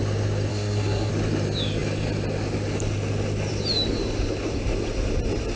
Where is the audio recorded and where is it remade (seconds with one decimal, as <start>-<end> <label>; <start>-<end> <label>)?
0.0-0.5 recorded; 0.5-1.1 remade; 1.1-5.6 recorded